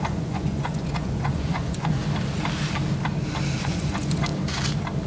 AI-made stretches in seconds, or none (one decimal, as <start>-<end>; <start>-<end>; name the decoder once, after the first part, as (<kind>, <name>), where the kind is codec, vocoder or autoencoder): 0.0-2.0 (vocoder, Vocos); 3.6-4.3